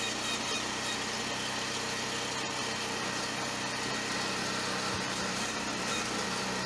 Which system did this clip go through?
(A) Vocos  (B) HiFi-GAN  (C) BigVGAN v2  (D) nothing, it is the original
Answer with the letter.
D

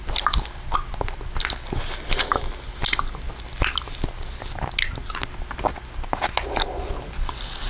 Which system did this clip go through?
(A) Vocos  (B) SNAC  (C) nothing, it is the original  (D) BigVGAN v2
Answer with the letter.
C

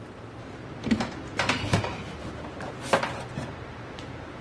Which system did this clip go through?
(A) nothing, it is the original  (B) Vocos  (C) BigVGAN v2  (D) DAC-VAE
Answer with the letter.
A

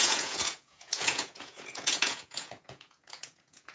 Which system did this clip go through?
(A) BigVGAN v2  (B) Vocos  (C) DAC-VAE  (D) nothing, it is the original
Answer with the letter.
B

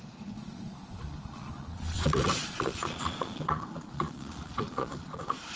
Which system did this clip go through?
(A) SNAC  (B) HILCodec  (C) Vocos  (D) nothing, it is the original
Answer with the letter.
C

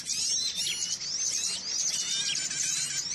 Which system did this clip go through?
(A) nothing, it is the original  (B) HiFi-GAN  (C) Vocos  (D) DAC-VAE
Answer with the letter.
A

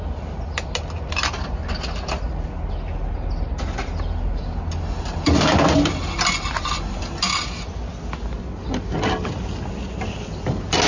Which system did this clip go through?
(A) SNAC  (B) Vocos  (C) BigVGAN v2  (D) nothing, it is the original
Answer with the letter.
D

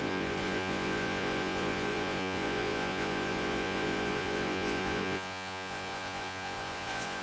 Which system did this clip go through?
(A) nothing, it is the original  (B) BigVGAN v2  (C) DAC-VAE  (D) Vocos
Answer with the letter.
D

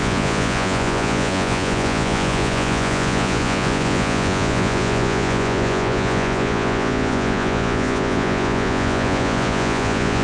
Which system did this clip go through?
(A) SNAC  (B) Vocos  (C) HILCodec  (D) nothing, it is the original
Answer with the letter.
B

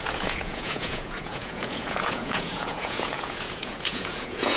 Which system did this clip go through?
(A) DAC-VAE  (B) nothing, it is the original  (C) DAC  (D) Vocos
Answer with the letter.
D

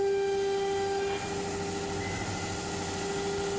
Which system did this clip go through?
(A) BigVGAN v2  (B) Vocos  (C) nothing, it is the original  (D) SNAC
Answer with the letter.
C